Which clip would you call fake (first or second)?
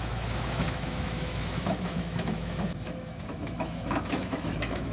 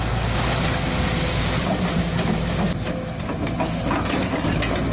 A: first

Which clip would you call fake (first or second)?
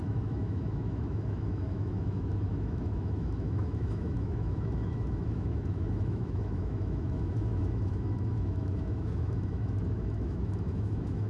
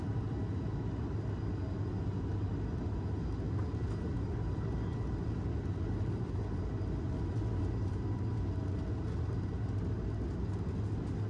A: first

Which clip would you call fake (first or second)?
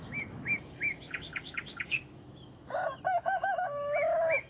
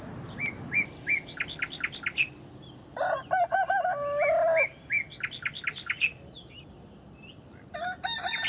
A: first